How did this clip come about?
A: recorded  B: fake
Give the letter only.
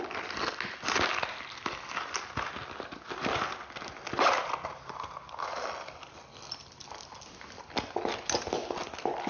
A